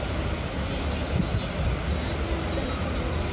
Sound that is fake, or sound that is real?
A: real